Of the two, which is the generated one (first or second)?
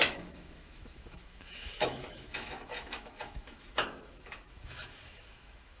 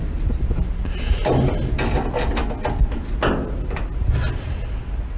first